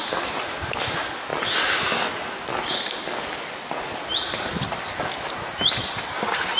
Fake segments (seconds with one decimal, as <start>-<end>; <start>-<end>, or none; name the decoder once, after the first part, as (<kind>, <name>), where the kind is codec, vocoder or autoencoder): none